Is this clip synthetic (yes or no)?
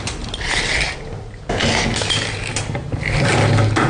no